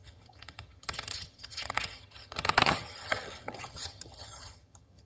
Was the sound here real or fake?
fake